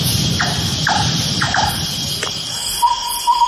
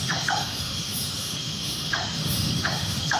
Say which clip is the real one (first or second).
first